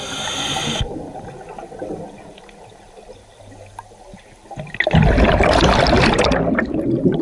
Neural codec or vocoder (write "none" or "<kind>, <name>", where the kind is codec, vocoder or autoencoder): none